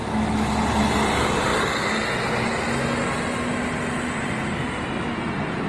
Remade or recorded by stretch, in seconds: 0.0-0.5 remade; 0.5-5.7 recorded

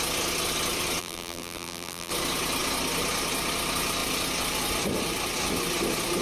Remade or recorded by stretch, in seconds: 0.0-1.0 recorded; 1.0-2.1 remade; 2.1-6.2 recorded

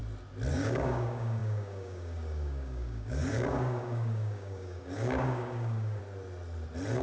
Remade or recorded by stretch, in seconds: 0.0-0.5 recorded; 0.5-6.0 remade; 6.0-7.0 recorded

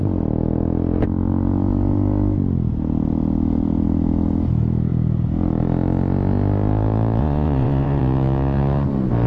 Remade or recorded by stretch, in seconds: 0.0-7.2 recorded; 7.2-8.0 remade; 8.0-9.3 recorded

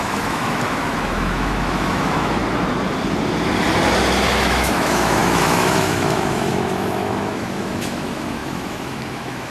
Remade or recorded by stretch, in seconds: 0.0-2.4 remade; 2.4-4.3 recorded; 4.3-9.5 remade